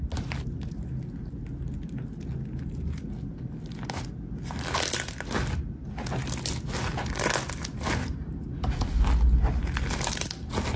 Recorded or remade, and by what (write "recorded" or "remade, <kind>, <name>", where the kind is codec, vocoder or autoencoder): recorded